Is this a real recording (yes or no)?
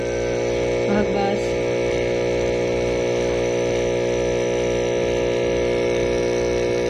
yes